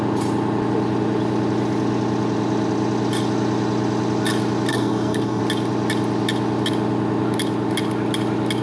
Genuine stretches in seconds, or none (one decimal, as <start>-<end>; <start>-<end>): 0.0-4.7; 5.4-8.6